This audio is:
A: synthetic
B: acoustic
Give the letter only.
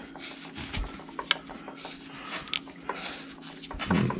B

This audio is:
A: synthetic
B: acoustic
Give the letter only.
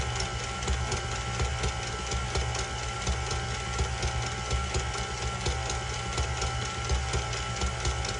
B